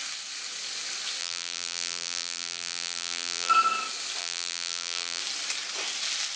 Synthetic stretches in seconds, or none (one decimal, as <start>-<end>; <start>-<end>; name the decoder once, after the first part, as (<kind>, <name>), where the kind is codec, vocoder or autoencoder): 1.2-3.5 (vocoder, BigVGAN v2); 4.2-5.2